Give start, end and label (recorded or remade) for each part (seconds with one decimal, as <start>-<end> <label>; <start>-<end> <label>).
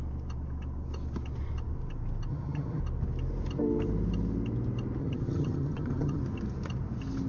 0.0-2.3 recorded; 2.3-2.8 remade; 2.8-5.0 recorded; 5.0-6.2 remade; 6.2-7.3 recorded